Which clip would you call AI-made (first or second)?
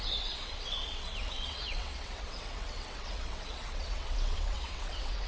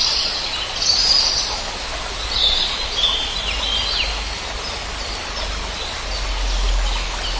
first